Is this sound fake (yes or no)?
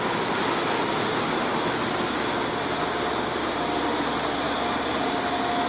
no